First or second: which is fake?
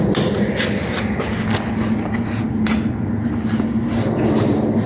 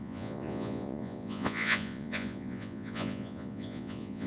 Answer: second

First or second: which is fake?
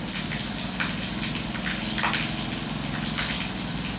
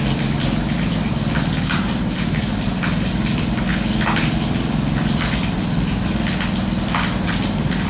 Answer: second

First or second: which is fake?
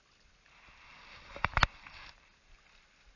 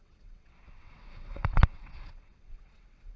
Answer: second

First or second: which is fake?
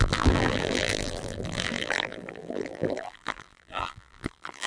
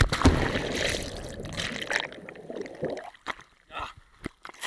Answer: first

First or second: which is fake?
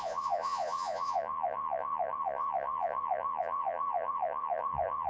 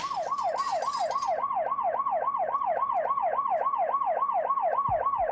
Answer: first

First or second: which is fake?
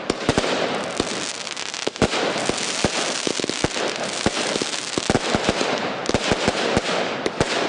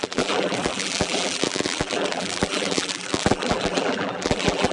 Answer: second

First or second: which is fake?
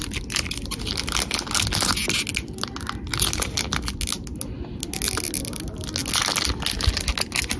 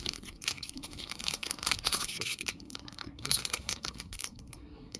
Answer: second